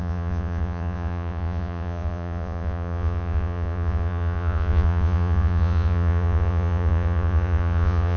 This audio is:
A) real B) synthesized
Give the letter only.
B